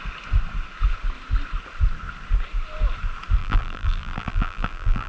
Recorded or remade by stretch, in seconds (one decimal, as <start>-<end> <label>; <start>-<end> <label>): 0.0-3.4 recorded; 3.4-5.1 remade